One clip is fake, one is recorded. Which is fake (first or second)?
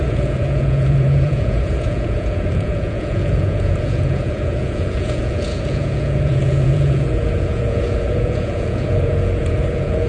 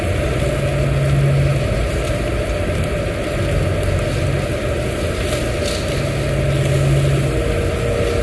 first